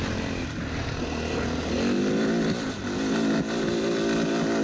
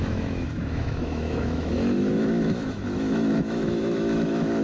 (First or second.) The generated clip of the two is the second